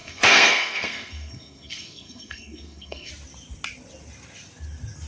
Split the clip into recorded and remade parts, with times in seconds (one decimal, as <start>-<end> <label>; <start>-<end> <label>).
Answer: 0.0-3.1 remade; 3.1-5.1 recorded